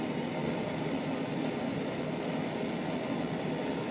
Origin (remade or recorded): recorded